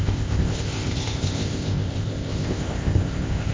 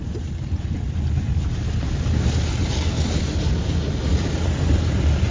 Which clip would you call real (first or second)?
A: second